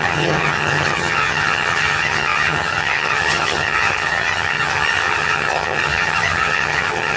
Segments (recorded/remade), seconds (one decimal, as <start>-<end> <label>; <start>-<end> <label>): 0.0-7.2 remade